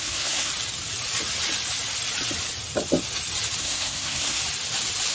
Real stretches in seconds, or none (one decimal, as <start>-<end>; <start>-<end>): 0.5-3.6; 4.4-5.1